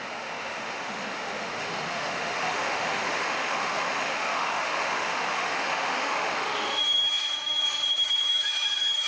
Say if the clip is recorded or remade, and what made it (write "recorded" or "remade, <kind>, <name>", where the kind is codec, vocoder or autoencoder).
remade, autoencoder, DAC-VAE